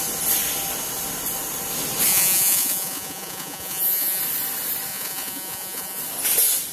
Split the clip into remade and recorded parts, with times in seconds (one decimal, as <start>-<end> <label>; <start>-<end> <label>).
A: 0.0-2.1 recorded; 2.1-4.2 remade; 4.2-4.9 recorded; 4.9-6.0 remade; 6.0-6.7 recorded